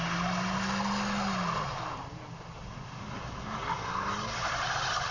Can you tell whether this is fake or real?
real